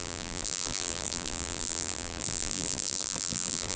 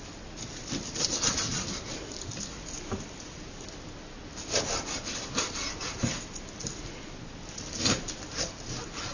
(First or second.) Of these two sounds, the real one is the second